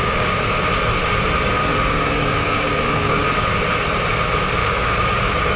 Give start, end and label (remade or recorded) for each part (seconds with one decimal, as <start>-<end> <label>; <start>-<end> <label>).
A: 0.0-0.6 remade; 0.6-1.6 recorded; 1.6-3.3 remade; 3.3-4.6 recorded; 4.6-5.6 remade